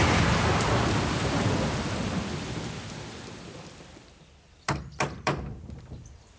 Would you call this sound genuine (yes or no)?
no